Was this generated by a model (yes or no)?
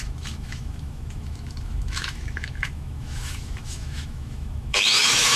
yes